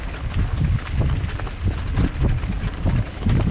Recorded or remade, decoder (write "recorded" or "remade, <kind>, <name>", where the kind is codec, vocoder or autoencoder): recorded